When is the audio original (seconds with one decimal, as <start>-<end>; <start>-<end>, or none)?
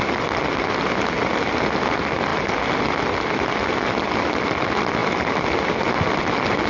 0.0-6.7